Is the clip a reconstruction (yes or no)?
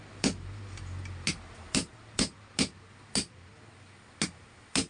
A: no